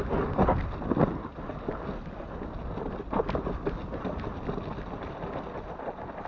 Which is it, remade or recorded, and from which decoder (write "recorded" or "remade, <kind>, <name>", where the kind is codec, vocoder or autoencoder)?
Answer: recorded